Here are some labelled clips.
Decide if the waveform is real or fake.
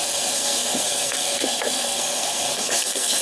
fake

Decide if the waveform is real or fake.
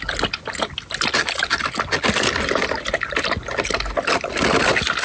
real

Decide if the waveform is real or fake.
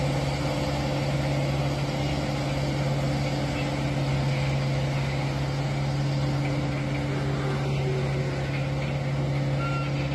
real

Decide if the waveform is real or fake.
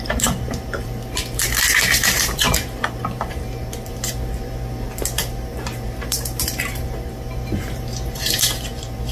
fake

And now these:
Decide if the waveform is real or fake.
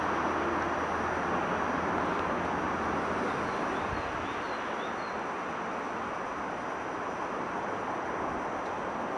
real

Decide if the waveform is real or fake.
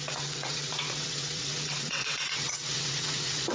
fake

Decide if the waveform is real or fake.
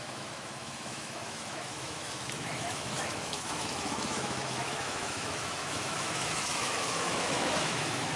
fake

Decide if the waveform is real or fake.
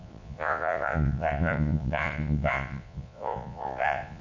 fake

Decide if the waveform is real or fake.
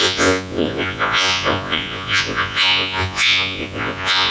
fake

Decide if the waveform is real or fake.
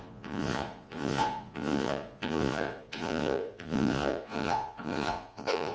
fake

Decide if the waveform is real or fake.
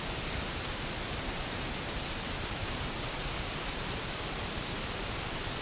fake